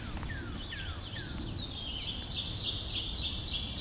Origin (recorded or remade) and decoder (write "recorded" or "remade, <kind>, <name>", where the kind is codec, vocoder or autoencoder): recorded